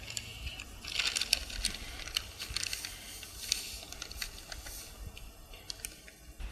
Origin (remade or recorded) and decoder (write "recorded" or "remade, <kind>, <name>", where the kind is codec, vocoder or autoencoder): recorded